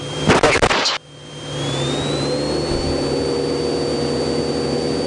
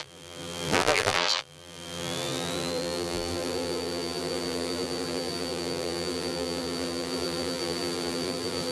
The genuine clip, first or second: first